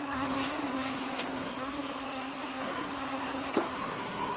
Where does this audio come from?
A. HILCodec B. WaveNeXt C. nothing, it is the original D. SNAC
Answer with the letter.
D